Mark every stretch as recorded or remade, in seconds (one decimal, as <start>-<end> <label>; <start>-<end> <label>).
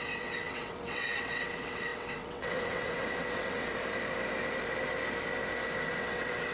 0.0-3.7 remade; 3.7-5.9 recorded; 5.9-6.5 remade